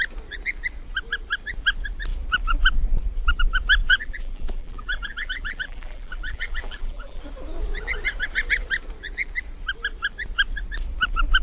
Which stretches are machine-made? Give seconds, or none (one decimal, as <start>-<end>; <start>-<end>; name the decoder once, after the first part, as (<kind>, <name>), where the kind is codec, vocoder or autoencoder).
3.8-7.2 (vocoder, BigVGAN v2)